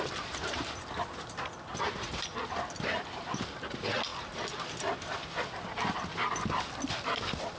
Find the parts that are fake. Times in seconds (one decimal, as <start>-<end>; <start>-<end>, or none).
none